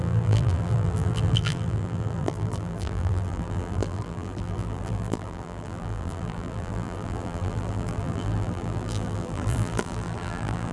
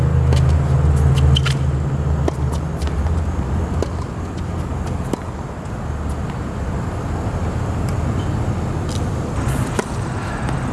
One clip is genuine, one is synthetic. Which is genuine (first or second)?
second